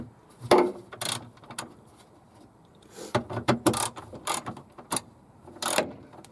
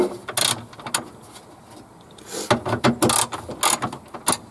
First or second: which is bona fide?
second